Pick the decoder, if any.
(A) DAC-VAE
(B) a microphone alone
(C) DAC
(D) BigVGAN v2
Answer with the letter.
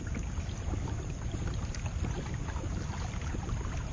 D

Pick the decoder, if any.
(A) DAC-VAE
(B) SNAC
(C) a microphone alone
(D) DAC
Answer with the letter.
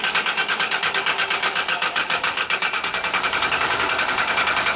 D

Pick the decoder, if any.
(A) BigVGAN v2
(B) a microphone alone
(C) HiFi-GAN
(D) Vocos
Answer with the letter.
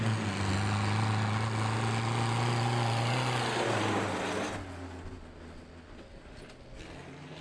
B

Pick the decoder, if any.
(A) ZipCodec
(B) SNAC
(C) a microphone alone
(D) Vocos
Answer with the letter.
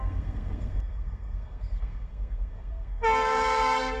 B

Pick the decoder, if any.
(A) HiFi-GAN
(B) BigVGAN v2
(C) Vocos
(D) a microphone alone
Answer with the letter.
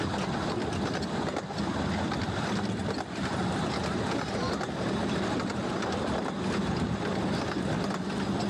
D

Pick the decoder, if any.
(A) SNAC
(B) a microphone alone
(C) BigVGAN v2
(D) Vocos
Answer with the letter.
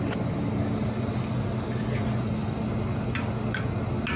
B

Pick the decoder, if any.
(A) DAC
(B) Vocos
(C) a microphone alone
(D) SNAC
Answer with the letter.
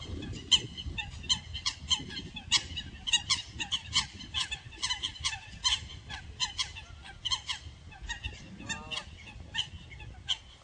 C